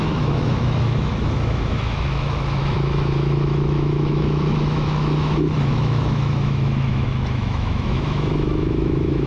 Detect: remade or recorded remade